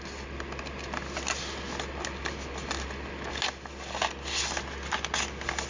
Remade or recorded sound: recorded